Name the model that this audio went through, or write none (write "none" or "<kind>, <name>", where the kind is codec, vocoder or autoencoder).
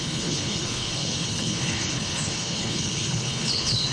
codec, HILCodec